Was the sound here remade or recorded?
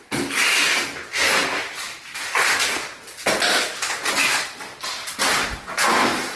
recorded